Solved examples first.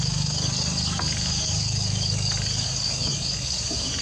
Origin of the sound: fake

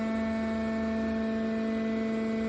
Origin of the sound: real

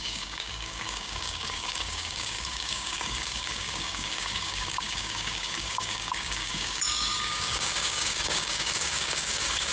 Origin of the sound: fake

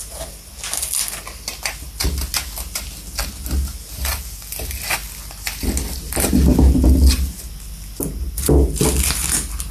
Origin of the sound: real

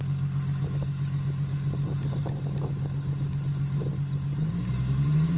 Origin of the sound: real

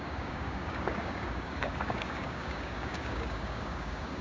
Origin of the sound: fake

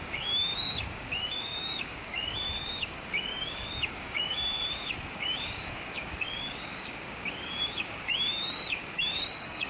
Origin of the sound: fake